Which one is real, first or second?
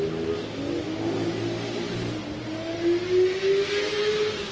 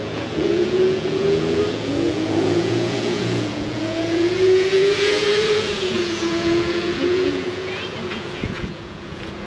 first